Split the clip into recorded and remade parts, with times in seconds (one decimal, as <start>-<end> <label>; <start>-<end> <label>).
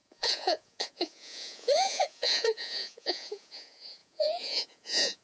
0.0-5.2 remade